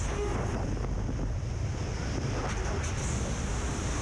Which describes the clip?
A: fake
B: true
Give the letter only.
B